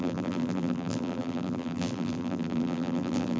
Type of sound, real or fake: fake